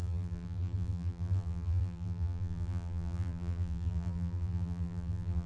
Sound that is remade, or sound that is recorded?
remade